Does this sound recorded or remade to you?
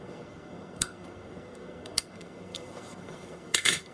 remade